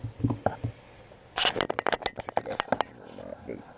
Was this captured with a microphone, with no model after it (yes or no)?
yes